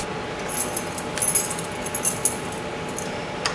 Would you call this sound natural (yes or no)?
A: yes